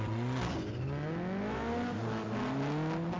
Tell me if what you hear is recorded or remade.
recorded